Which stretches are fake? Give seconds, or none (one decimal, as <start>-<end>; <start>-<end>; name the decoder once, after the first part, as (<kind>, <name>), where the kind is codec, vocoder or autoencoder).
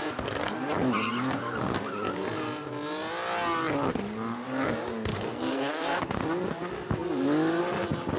5.1-6.0 (codec, SNAC)